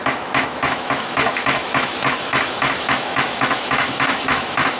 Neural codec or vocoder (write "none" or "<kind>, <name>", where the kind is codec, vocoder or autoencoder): autoencoder, DAC-VAE